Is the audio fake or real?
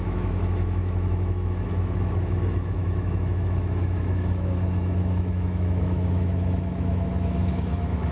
fake